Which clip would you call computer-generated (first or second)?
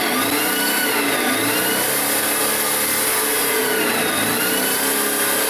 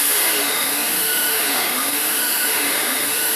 second